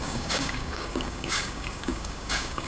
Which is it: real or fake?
fake